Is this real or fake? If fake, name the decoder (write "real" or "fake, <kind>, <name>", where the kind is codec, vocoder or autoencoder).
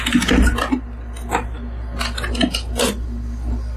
real